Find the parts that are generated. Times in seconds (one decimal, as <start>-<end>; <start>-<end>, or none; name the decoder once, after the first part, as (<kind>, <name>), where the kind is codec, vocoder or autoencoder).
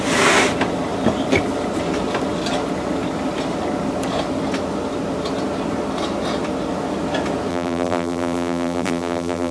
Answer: 7.5-9.5 (vocoder, BigVGAN v2)